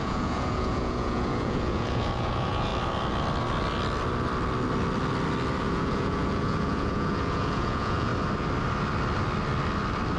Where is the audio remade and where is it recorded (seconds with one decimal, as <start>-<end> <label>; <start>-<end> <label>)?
0.0-2.7 remade; 2.7-5.6 recorded; 5.6-8.1 remade; 8.1-10.2 recorded